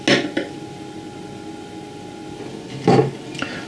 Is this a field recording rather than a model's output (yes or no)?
yes